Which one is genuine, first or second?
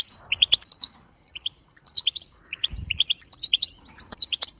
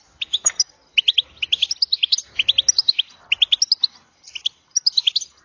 second